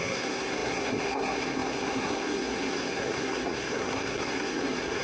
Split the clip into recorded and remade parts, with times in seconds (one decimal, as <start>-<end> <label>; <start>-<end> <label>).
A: 0.0-5.0 remade